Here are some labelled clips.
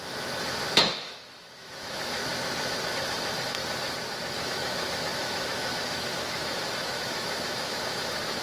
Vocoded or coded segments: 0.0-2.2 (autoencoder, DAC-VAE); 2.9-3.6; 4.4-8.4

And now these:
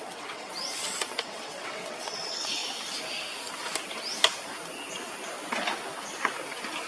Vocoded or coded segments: 0.0-0.5 (vocoder, WaveNeXt); 1.2-2.6

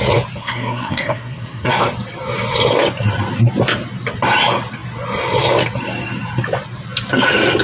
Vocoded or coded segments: 0.4-1.7 (codec, SNAC)

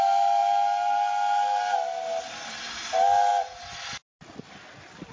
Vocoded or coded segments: none